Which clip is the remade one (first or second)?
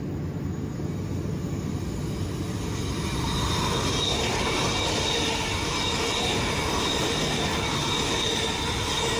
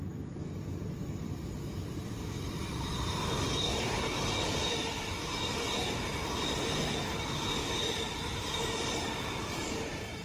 second